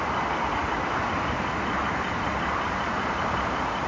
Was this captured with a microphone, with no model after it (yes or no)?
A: no